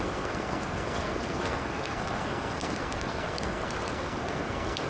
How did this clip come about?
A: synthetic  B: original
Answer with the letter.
A